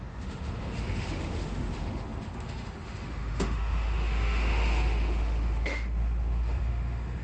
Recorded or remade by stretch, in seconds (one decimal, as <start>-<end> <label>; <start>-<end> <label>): 0.0-7.2 remade